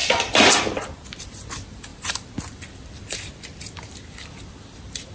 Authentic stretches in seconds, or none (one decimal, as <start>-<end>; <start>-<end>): none